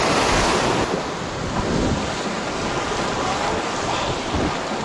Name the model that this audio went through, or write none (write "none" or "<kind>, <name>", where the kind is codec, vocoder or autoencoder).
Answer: none